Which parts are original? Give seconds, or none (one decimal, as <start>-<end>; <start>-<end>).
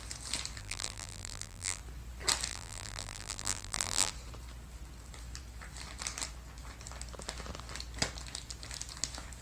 0.0-0.6; 1.8-2.5; 4.1-9.4